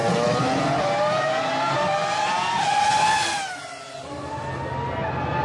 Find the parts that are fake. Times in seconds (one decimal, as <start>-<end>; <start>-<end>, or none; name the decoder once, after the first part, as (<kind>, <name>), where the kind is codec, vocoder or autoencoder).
none